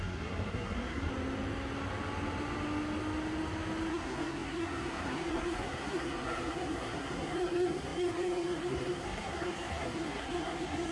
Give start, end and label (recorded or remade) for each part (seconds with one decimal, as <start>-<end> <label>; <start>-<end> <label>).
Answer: 0.0-1.1 remade; 1.1-3.9 recorded; 3.9-10.9 remade